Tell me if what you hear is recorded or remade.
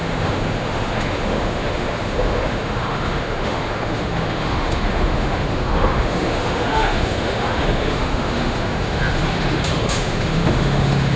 remade